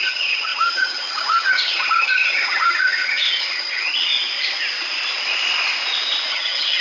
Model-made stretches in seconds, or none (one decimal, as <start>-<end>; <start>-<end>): 0.0-4.1; 6.3-6.8